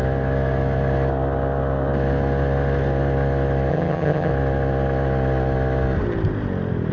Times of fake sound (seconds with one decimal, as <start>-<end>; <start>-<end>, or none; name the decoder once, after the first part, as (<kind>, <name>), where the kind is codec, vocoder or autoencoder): 3.7-4.3 (vocoder, HiFi-GAN)